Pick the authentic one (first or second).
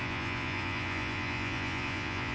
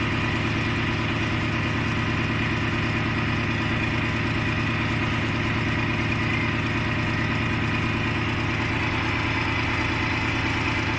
second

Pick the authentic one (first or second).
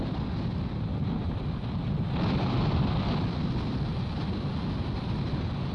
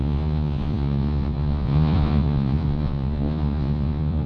first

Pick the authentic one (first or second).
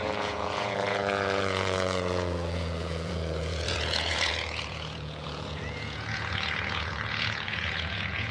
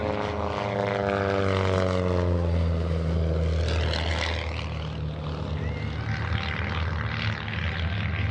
second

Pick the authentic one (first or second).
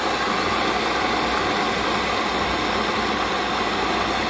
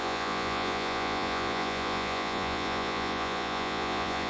first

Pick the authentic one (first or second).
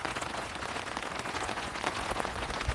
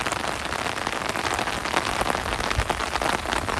second